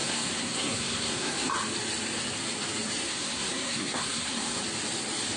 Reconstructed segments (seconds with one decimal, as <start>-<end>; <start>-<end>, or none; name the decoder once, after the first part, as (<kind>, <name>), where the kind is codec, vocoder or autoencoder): 0.0-1.5 (codec, SNAC); 3.1-4.6

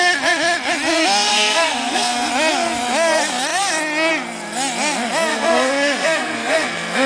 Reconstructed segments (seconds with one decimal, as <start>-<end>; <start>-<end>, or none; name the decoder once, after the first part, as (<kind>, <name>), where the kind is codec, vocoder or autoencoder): 1.3-2.3 (codec, SNAC); 5.3-7.1

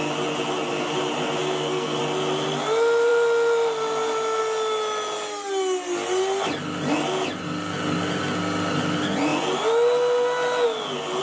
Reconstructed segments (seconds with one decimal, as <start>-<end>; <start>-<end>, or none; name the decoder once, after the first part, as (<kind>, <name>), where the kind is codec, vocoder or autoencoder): 1.4-2.0 (codec, SNAC)

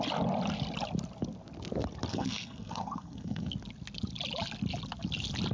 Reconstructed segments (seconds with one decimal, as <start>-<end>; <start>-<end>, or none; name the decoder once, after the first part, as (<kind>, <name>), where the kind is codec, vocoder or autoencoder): 2.1-3.5 (codec, SNAC)

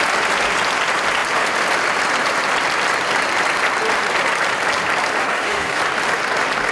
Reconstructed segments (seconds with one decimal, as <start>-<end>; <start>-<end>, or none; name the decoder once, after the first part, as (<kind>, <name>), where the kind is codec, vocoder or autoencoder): 5.2-5.8 (codec, SNAC)

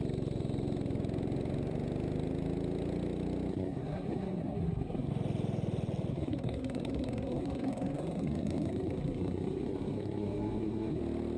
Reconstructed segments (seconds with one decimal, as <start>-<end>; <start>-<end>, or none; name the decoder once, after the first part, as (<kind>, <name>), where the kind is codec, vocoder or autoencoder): 3.5-5.1 (codec, SNAC); 6.1-11.0

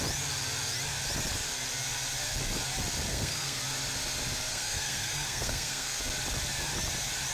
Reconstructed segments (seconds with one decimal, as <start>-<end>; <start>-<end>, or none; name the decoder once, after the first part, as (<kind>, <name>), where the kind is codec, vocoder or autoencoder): 3.1-3.6 (codec, SNAC); 4.5-6.0

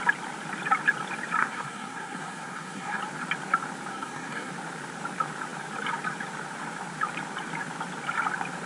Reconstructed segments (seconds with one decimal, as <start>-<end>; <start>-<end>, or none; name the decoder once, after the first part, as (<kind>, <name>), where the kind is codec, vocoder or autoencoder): 1.4-3.0 (codec, SNAC); 3.9-4.5